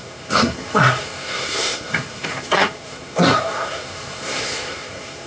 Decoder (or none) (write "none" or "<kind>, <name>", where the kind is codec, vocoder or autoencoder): codec, SNAC